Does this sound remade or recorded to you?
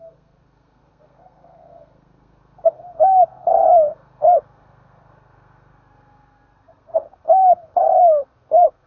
remade